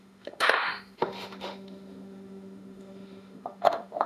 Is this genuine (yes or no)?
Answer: no